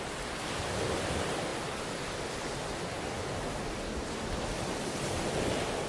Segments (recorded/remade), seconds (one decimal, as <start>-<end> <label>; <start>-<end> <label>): 0.0-5.9 recorded